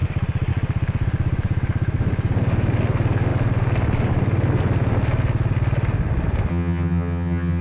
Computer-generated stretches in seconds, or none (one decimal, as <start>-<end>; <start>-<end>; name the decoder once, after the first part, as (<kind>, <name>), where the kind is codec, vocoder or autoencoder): 6.5-7.6 (vocoder, HiFi-GAN)